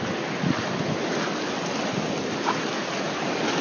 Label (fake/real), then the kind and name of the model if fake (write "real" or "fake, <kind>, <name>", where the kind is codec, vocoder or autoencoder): real